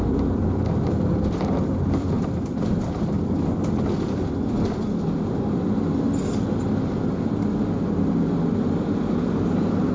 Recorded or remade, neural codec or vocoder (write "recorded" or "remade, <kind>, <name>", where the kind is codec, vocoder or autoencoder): remade, vocoder, BigVGAN v2